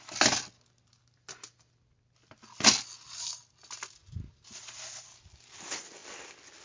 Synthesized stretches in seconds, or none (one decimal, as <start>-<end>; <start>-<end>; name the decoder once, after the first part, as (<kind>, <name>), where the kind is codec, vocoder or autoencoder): none